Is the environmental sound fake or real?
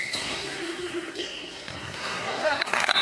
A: fake